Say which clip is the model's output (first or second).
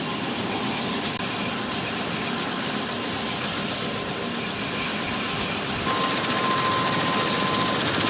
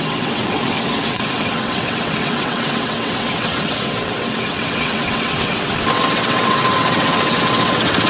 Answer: second